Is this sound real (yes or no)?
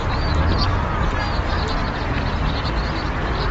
yes